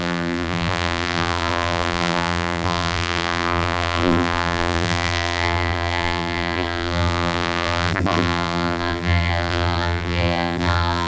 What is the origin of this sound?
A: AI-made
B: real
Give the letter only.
A